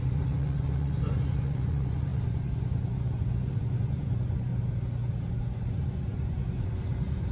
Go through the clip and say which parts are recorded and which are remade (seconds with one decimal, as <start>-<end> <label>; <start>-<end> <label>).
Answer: 0.0-4.5 remade; 4.5-5.3 recorded; 5.3-7.3 remade